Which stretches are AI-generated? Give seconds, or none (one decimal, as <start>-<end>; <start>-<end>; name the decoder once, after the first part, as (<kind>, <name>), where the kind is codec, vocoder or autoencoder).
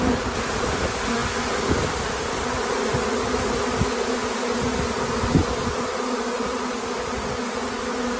none